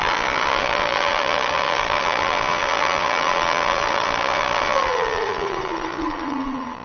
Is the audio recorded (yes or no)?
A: no